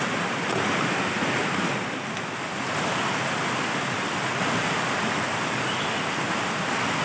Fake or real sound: real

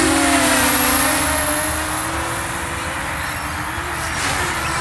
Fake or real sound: real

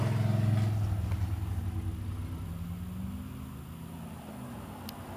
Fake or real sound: real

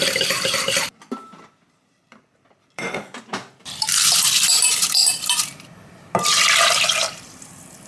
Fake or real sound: fake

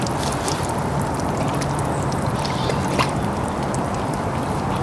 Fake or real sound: fake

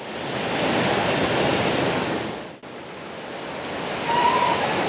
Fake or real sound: real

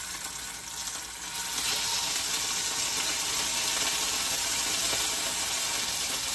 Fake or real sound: real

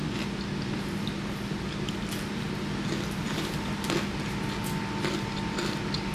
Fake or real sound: real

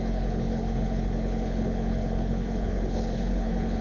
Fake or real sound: fake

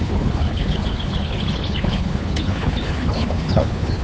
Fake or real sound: fake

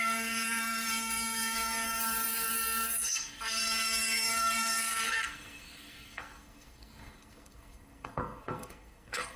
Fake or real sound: fake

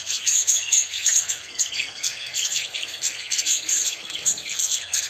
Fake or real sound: fake